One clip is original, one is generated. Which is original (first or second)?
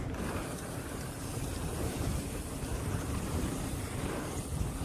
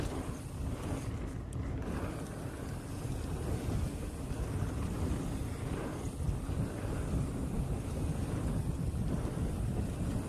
second